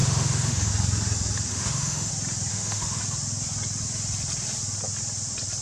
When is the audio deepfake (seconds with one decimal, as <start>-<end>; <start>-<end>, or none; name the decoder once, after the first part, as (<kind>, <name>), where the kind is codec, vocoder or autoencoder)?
0.0-0.7 (autoencoder, DAC-VAE); 1.5-2.1; 2.5-3.0